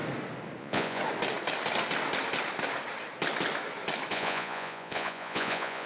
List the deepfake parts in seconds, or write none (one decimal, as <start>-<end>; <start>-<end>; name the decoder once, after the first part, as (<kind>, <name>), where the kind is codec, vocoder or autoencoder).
0.6-1.0 (vocoder, Vocos); 4.1-5.9